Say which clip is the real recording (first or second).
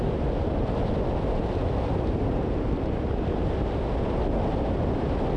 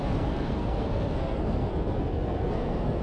first